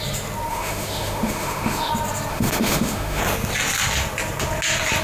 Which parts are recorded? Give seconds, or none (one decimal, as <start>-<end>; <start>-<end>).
0.0-0.5; 1.9-2.3; 3.2-5.0